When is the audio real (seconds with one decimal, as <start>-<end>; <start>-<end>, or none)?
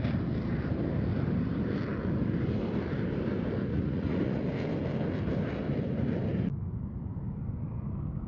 0.0-3.7; 4.4-8.3